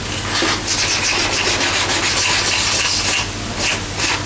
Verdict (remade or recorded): recorded